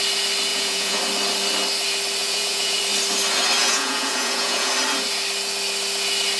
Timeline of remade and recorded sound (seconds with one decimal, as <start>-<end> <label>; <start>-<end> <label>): 0.0-0.5 recorded; 0.5-1.0 remade; 1.0-2.2 recorded; 2.2-2.8 remade; 2.8-3.6 recorded; 3.6-4.7 remade; 4.7-6.4 recorded